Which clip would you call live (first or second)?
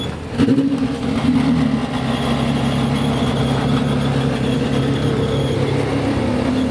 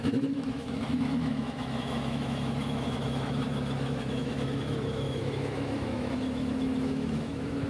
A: first